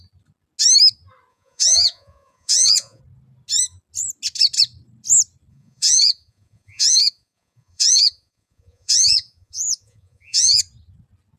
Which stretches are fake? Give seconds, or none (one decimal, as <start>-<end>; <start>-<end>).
1.3-3.0; 5.5-10.6